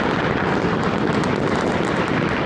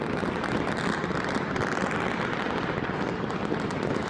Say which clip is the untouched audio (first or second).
second